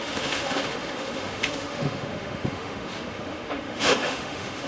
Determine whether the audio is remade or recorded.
remade